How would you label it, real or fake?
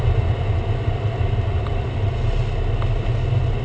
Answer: real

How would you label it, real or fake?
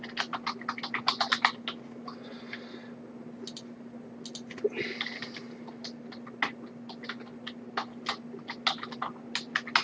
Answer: real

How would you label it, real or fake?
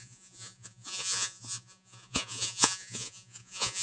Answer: fake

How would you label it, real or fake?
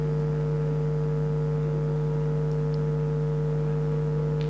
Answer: real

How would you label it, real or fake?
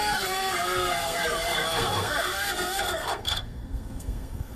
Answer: fake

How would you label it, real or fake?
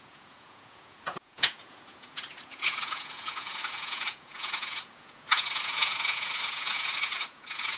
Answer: fake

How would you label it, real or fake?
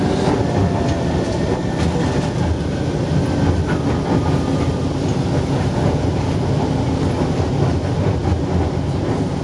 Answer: real